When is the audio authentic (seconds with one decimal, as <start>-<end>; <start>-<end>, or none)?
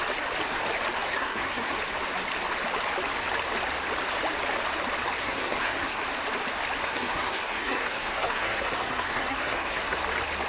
0.0-1.1; 1.8-5.2; 6.0-6.8; 10.0-10.5